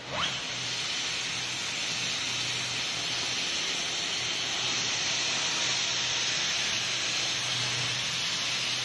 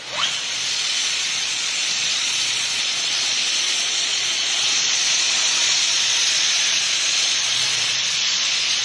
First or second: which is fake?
second